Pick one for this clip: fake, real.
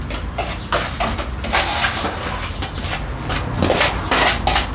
real